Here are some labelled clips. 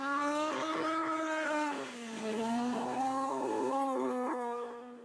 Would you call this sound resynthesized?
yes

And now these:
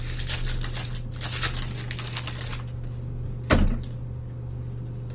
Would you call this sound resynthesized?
no